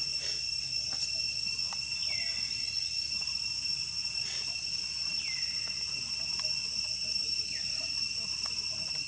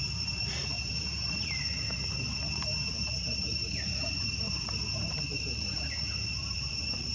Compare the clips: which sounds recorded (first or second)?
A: first